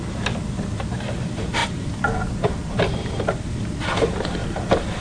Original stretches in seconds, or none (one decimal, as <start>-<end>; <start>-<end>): 0.0-1.6; 3.6-4.4